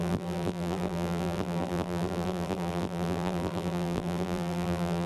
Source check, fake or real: fake